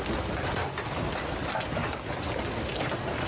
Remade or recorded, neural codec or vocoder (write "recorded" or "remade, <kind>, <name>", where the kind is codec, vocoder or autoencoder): recorded